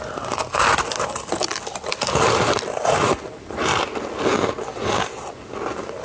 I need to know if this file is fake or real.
real